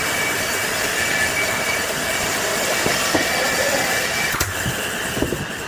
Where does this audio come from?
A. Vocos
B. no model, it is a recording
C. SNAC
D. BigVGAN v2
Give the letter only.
B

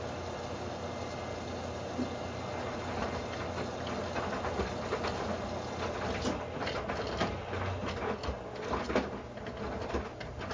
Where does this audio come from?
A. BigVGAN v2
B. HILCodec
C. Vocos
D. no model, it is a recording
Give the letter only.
D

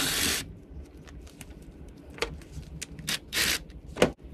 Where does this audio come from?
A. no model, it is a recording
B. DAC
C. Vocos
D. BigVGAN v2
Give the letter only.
A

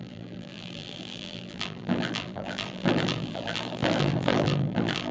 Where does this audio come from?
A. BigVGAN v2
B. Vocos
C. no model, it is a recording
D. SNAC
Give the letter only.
A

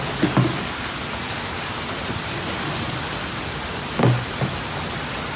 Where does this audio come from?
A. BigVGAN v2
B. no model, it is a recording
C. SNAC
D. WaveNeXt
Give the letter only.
B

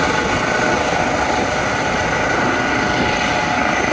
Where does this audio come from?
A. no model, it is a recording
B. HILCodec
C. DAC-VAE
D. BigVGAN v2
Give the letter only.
A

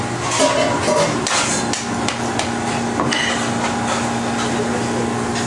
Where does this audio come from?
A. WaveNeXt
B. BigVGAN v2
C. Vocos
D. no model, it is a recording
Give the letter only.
D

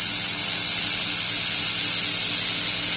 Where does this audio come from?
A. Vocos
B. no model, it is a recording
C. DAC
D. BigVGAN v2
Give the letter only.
B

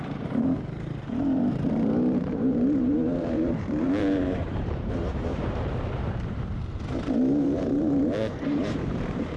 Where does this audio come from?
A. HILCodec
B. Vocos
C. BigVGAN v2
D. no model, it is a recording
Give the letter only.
C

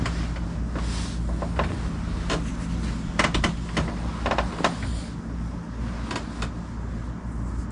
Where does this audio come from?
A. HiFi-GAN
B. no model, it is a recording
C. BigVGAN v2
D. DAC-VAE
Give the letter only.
B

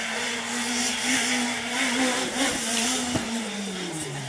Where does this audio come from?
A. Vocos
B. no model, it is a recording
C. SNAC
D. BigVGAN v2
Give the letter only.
D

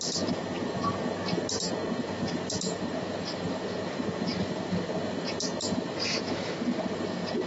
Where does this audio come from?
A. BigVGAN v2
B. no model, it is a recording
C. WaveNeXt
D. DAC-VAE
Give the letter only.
B